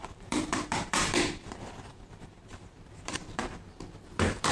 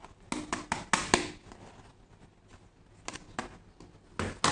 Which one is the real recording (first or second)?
second